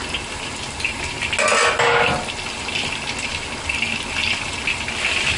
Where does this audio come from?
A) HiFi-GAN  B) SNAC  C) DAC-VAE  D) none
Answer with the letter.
D